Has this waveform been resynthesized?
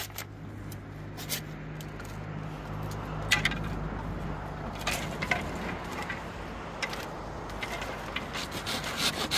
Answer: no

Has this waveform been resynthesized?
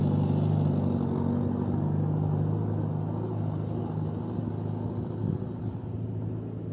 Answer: no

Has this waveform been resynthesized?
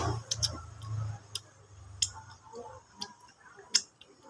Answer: no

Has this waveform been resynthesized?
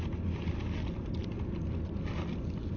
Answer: no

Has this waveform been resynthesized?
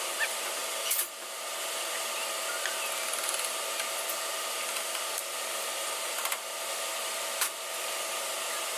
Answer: no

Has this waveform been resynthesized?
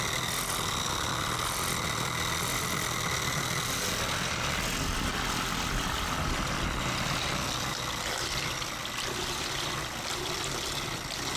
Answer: no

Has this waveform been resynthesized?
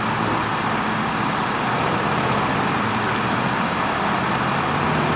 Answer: no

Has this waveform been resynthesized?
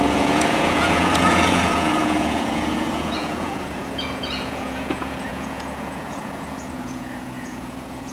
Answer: yes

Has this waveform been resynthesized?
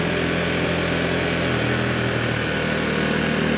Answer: no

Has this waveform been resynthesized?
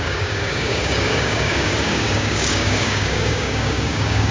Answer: yes